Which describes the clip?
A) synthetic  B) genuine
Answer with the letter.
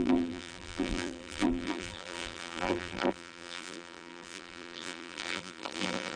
A